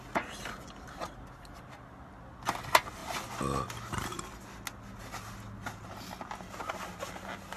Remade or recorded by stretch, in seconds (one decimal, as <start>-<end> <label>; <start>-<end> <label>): 0.0-7.6 recorded